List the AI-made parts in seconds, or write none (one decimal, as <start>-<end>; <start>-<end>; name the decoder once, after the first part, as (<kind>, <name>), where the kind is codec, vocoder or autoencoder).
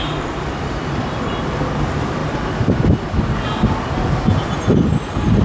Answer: 0.0-2.2 (vocoder, BigVGAN v2)